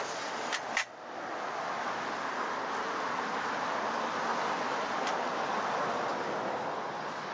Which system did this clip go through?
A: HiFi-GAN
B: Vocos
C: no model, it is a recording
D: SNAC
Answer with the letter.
C